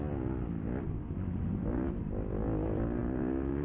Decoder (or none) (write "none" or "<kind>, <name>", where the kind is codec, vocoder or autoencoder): none